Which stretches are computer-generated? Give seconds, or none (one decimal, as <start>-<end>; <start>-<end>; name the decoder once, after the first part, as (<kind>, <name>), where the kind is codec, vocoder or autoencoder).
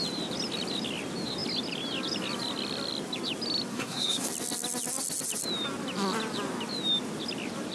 3.7-4.3 (codec, SNAC)